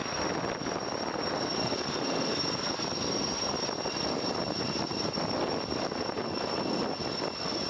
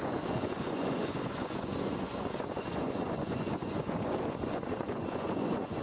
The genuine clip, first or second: first